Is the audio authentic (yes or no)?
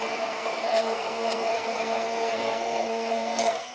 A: no